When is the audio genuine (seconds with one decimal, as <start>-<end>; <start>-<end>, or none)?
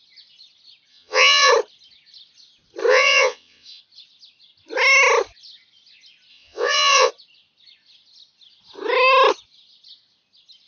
0.0-0.9; 1.5-2.9; 3.8-6.3; 7.1-10.7